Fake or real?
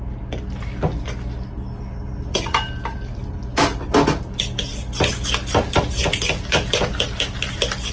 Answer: real